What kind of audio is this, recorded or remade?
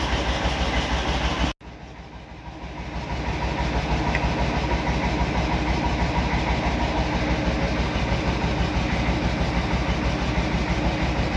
recorded